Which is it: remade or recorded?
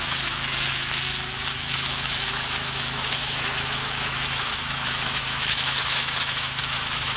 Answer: remade